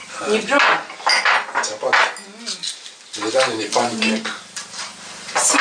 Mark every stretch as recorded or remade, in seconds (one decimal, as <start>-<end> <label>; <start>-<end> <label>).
0.0-3.3 recorded; 3.3-5.6 remade